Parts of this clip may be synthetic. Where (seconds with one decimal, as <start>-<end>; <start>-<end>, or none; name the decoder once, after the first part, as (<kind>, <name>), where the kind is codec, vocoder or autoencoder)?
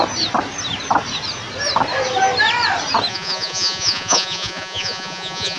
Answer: 3.1-5.6 (vocoder, Vocos)